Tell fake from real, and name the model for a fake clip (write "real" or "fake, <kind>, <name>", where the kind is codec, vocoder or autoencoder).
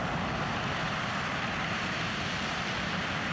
fake, vocoder, BigVGAN v2